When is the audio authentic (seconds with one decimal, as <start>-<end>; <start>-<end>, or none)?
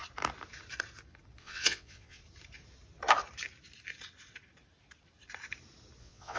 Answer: 0.0-1.4; 2.2-6.0